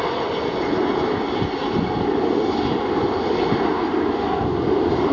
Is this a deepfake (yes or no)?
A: no